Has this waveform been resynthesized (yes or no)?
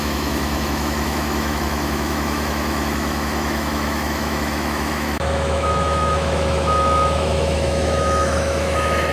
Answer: yes